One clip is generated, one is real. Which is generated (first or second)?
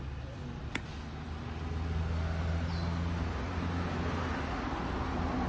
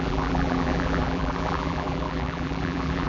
second